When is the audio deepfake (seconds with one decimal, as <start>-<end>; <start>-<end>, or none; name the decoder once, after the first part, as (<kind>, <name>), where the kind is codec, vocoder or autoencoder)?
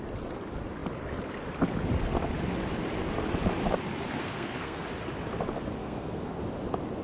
4.2-4.8 (codec, SNAC); 5.8-6.4